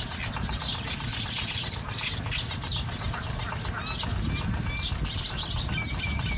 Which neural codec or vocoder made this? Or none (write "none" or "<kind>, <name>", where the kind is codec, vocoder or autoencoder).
none